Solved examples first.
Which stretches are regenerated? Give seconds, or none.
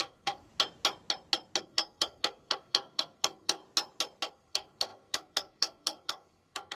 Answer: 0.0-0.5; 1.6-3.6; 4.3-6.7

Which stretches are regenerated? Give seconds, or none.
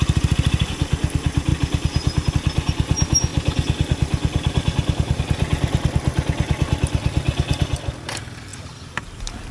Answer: none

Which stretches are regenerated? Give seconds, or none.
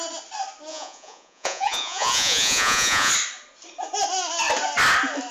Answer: 0.7-3.1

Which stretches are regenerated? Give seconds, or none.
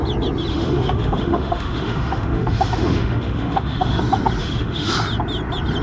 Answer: 0.5-4.0; 4.4-4.9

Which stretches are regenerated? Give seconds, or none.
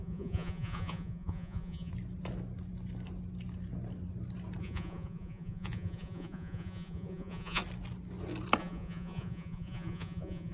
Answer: 0.0-1.9; 4.6-7.6; 8.6-10.5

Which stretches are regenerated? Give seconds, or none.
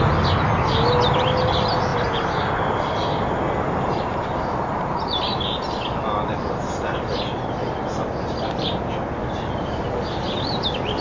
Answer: none